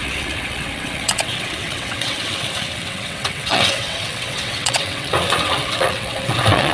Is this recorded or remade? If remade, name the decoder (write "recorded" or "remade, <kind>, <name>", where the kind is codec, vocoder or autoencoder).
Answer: remade, vocoder, WaveNeXt